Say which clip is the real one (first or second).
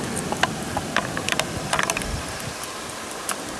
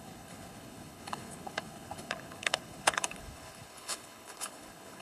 first